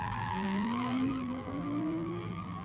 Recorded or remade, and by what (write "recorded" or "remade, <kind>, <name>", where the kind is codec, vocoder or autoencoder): remade, vocoder, BigVGAN v2